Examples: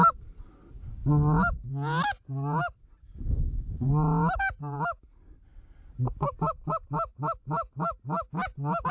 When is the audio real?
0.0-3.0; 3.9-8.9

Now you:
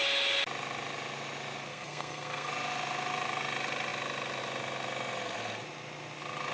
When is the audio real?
0.0-1.7; 2.5-6.5

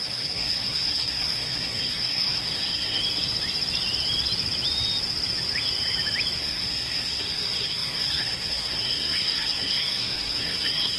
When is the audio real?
3.0-6.4

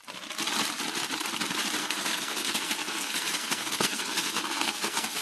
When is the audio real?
0.0-1.8

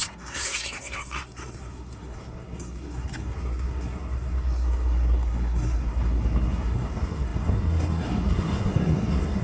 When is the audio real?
none